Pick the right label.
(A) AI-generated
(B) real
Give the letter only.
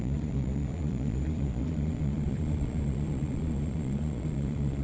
A